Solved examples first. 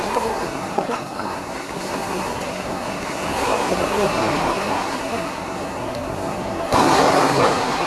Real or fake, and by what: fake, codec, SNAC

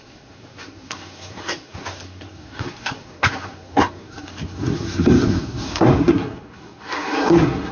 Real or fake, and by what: fake, codec, SNAC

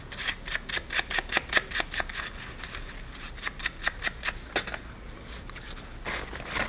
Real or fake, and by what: real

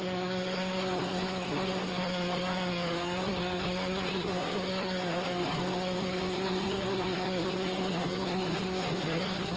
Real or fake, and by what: fake, codec, SNAC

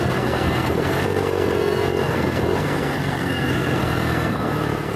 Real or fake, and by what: fake, codec, SNAC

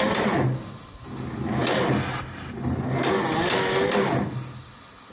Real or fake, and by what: real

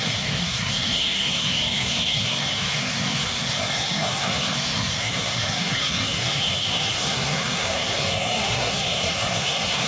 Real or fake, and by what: fake, codec, SNAC